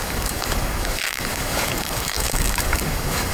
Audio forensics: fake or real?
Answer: fake